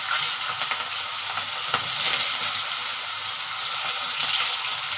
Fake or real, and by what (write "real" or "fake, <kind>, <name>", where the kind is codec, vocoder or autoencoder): real